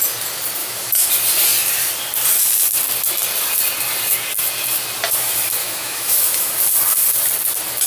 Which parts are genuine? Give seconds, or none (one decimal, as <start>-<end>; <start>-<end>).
0.0-0.6; 1.1-5.6; 6.5-7.9